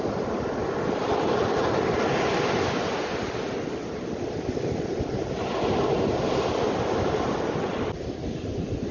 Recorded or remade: recorded